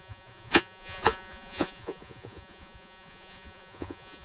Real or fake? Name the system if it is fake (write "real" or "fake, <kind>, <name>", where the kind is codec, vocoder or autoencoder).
fake, vocoder, Vocos